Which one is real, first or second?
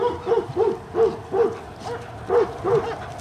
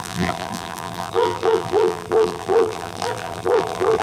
first